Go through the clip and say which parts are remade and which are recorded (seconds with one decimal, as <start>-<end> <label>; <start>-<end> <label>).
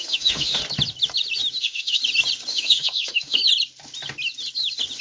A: 0.0-0.6 remade; 0.6-1.6 recorded; 1.6-2.0 remade; 2.0-2.5 recorded; 2.5-3.4 remade; 3.4-5.0 recorded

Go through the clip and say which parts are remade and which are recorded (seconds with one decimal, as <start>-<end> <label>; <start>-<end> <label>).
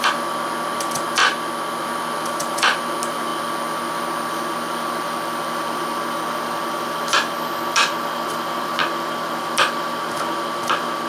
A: 0.0-11.1 recorded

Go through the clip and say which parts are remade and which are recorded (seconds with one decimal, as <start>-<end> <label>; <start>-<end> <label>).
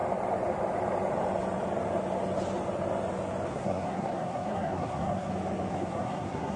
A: 0.0-3.5 recorded; 3.5-5.3 remade; 5.3-5.7 recorded; 5.7-6.6 remade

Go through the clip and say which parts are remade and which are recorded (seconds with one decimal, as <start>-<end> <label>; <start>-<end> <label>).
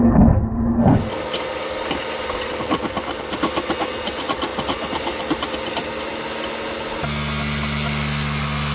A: 0.0-8.7 recorded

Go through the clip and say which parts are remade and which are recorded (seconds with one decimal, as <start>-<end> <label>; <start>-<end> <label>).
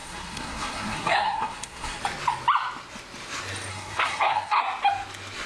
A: 0.0-2.0 remade; 2.0-3.7 recorded; 3.7-4.6 remade; 4.6-5.5 recorded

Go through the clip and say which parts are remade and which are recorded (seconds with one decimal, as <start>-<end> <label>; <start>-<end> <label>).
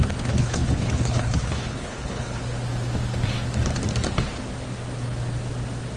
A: 0.0-2.4 remade; 2.4-6.0 recorded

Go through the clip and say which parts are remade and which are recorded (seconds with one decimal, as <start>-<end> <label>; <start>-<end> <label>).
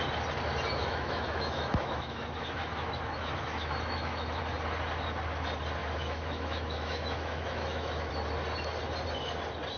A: 0.0-0.8 recorded; 0.8-4.4 remade; 4.4-5.8 recorded; 5.8-8.1 remade; 8.1-9.8 recorded